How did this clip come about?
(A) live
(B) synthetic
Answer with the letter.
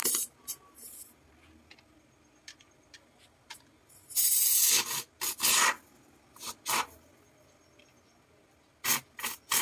A